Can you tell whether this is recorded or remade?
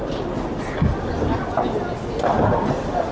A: recorded